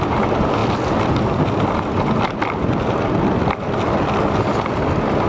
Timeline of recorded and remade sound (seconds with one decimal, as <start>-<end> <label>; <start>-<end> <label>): 0.0-5.3 recorded